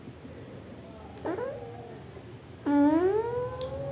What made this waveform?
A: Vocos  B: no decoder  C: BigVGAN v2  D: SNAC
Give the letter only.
B